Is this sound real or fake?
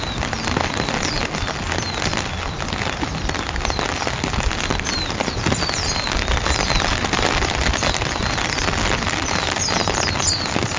real